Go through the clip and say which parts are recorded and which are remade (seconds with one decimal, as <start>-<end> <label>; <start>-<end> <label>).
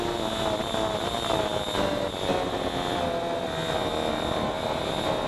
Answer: 0.0-5.3 recorded